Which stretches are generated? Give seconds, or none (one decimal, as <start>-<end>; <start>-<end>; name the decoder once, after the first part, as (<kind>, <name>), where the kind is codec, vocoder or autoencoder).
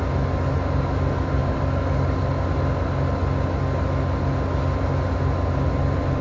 none